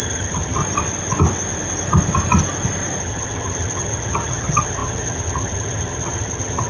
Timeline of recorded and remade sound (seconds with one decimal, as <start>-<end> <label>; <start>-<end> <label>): 0.0-0.6 remade; 0.6-3.0 recorded; 3.0-6.7 remade